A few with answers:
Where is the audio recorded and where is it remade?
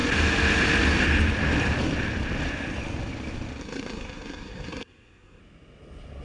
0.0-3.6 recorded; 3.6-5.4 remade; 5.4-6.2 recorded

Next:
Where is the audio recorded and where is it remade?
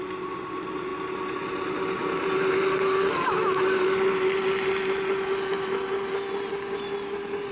0.0-7.5 recorded